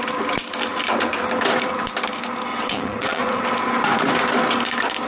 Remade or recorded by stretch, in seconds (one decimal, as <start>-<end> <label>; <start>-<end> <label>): 0.0-2.5 recorded; 2.5-3.4 remade; 3.4-5.1 recorded

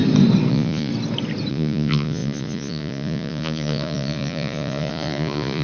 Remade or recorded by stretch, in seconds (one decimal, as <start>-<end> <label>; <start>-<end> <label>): 0.0-0.5 recorded; 0.5-0.9 remade; 0.9-1.5 recorded; 1.5-5.6 remade

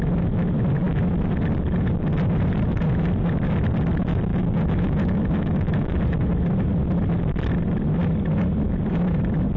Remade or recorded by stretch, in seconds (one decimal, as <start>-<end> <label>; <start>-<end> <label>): 0.0-4.3 recorded; 4.3-6.0 remade; 6.0-9.6 recorded

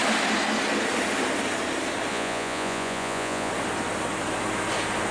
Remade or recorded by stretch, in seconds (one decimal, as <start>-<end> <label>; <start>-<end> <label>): 0.0-2.1 recorded; 2.1-3.5 remade; 3.5-5.1 recorded

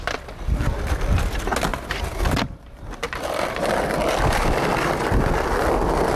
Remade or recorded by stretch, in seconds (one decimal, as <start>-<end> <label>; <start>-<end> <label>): 0.0-1.7 recorded; 1.7-4.9 remade; 4.9-6.2 recorded

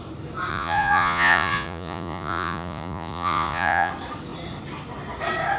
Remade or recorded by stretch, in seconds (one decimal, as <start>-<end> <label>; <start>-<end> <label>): 0.0-0.5 recorded; 0.5-3.9 remade; 3.9-5.6 recorded

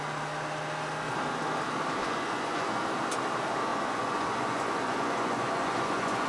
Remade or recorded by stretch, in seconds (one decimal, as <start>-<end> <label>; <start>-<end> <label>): 0.0-2.0 recorded; 2.0-2.8 remade; 2.8-3.7 recorded; 3.7-6.3 remade